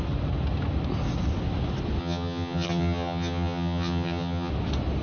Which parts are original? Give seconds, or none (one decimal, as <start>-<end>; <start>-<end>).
0.0-2.0; 4.5-5.0